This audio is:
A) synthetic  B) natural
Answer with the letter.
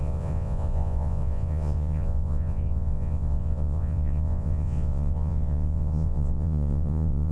A